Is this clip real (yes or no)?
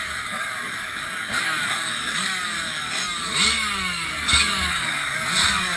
no